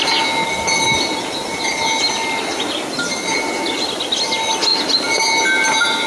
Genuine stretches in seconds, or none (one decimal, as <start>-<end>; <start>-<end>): 0.0-6.1